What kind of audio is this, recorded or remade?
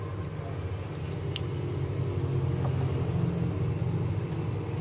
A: recorded